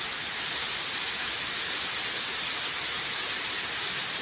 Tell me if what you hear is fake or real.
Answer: real